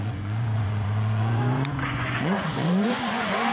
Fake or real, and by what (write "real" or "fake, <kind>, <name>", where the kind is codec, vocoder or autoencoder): fake, vocoder, Vocos